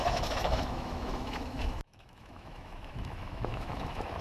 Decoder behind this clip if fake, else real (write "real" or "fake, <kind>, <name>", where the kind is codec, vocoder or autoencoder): fake, autoencoder, DAC-VAE